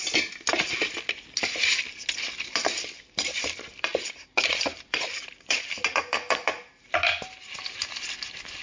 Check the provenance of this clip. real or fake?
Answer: real